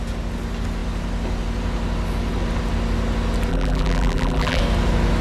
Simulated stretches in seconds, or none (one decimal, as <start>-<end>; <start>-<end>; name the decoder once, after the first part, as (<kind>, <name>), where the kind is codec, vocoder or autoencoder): 3.5-4.6 (vocoder, BigVGAN v2)